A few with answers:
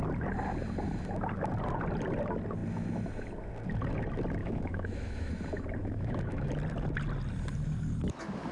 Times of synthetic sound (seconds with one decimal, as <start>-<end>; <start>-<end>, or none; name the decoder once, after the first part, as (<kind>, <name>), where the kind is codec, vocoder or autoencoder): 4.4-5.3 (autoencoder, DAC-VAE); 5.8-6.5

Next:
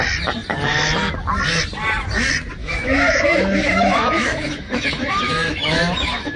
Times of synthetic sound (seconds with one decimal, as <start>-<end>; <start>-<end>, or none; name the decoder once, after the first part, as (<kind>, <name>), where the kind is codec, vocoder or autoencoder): 2.6-6.4 (autoencoder, DAC-VAE)

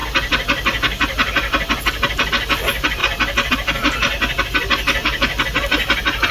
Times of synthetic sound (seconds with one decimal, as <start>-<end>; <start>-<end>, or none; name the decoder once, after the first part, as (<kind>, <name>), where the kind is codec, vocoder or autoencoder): none

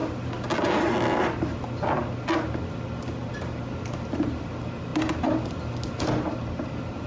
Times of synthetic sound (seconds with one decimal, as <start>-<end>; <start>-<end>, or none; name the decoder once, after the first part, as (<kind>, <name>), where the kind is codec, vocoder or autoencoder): none